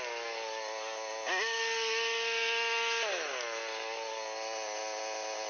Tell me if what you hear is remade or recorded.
recorded